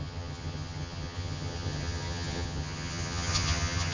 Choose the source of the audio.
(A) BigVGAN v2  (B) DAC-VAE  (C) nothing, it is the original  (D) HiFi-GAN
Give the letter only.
D